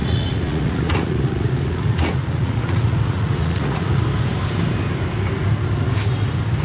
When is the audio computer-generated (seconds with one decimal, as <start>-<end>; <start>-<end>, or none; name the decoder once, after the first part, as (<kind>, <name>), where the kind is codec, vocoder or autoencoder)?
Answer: 0.0-4.0 (vocoder, Vocos)